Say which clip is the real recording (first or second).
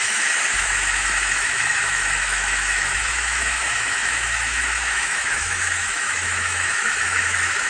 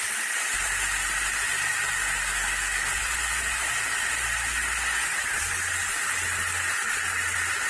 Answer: second